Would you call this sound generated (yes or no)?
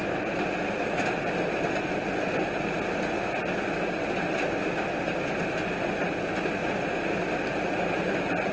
no